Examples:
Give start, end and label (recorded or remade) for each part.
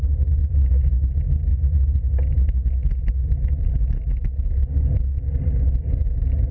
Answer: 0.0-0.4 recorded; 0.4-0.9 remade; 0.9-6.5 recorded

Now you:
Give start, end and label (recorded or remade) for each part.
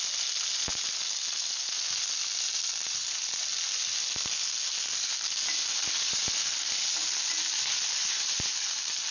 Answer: 0.0-9.1 recorded